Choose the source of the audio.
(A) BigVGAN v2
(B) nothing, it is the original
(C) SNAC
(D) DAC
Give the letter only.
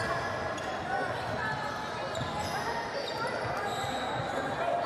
B